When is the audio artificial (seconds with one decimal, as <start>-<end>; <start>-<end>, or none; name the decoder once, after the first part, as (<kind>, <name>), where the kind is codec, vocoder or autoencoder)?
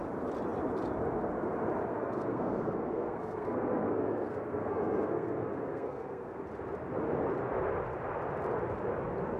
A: 1.9-6.4 (codec, SNAC)